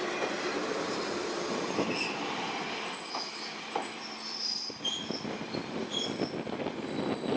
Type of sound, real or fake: real